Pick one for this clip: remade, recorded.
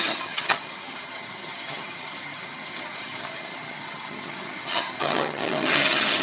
remade